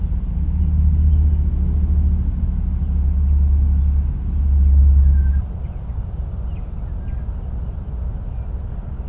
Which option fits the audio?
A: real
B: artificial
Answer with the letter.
A